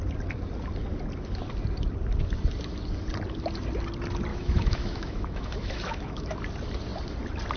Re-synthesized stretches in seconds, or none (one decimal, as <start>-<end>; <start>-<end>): 4.3-6.3